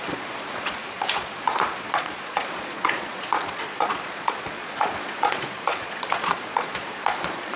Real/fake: fake